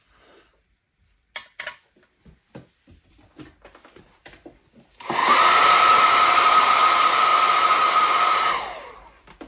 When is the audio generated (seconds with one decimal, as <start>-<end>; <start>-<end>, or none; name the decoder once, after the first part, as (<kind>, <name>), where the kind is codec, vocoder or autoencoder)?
0.0-5.2 (vocoder, BigVGAN v2); 6.2-7.3; 7.8-9.5